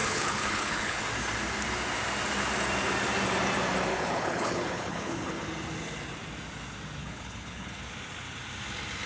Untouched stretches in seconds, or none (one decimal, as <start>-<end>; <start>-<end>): 1.0-3.9; 5.4-7.0; 7.8-9.1

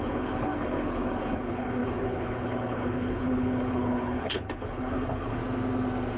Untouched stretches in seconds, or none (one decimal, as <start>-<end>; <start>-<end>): 5.4-6.2

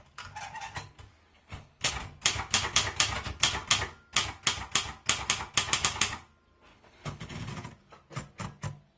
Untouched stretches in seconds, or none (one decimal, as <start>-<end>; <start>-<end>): 0.0-1.3; 1.9-6.7; 7.5-9.0

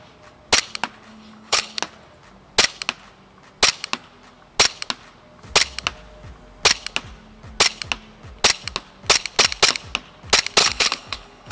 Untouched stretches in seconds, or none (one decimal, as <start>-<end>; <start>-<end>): 0.0-1.1; 1.8-10.6

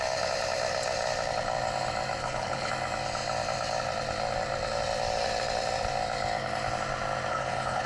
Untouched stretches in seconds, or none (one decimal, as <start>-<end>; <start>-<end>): 0.0-2.2; 2.7-7.3

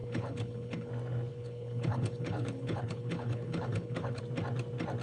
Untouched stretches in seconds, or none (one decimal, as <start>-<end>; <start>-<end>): 0.9-1.3; 4.2-5.0

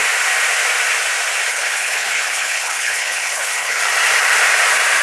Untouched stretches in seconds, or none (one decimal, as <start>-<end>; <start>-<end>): 0.0-1.5; 3.8-5.0

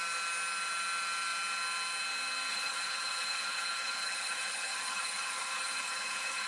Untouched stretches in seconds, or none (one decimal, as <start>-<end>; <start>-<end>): 0.0-2.5